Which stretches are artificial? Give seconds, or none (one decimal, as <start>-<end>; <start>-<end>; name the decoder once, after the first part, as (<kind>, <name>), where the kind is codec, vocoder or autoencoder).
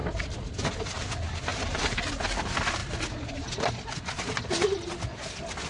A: 0.0-0.5 (vocoder, BigVGAN v2); 1.5-2.1